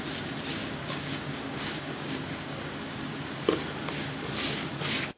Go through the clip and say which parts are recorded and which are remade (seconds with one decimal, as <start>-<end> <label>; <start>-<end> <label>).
0.0-0.6 recorded; 0.6-3.4 remade; 3.4-5.2 recorded